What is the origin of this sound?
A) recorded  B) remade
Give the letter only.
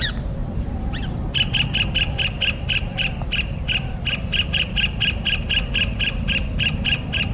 B